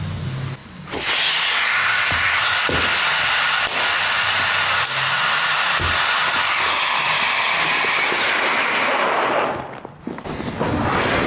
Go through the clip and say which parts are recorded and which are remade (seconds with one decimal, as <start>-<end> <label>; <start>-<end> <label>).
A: 0.0-11.3 recorded